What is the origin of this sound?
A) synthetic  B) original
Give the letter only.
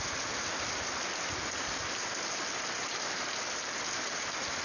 B